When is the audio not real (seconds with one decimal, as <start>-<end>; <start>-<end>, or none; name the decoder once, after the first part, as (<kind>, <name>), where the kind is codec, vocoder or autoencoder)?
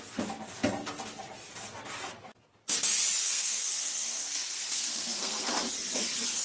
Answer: 3.2-5.5 (codec, SNAC)